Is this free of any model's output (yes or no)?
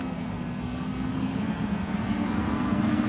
no